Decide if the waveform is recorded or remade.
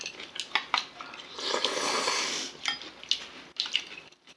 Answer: recorded